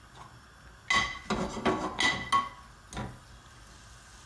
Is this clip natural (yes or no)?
yes